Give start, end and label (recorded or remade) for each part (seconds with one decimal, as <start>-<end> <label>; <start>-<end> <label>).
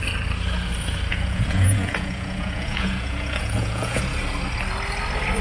0.0-1.1 recorded; 1.1-4.0 remade; 4.0-5.4 recorded